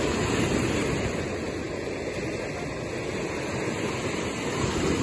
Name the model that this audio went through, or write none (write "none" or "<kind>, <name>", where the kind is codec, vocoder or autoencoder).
none